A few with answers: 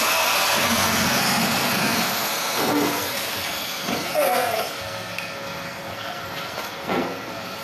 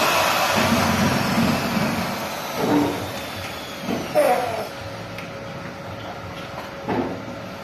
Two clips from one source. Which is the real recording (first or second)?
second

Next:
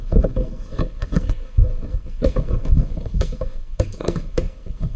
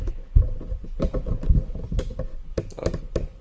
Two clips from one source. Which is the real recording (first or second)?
second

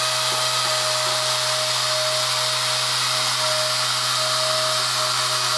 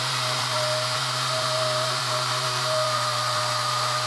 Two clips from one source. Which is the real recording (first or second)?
first